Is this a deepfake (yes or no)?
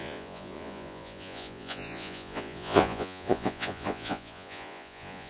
yes